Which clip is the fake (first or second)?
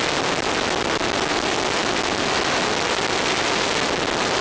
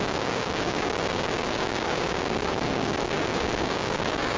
second